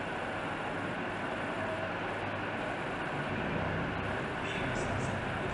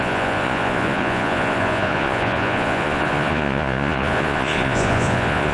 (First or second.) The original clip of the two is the first